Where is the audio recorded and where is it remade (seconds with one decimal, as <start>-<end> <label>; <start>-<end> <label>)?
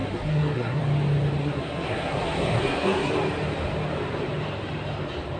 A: 0.0-0.8 remade; 0.8-1.4 recorded; 1.4-3.1 remade; 3.1-5.4 recorded